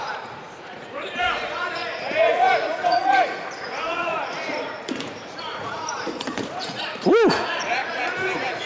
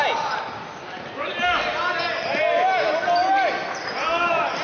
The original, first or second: second